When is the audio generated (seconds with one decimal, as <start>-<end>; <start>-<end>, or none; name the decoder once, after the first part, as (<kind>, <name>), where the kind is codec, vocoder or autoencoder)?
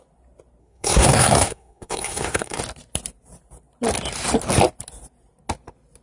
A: 0.6-2.6 (codec, SNAC)